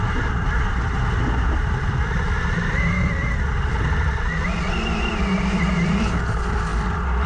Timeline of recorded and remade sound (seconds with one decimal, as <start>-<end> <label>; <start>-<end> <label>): 0.0-7.3 recorded

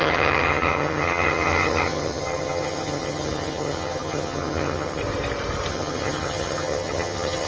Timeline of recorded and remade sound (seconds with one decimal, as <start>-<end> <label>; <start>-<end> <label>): 0.0-5.0 remade; 5.0-5.7 recorded; 5.7-7.5 remade

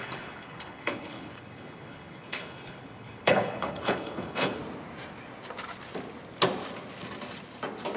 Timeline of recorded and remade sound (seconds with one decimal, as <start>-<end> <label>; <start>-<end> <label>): 0.0-4.6 remade; 4.6-8.0 recorded